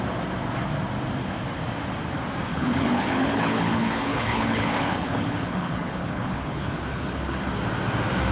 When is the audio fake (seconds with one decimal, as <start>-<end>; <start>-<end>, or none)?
2.5-7.5